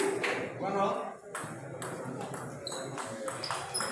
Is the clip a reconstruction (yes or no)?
no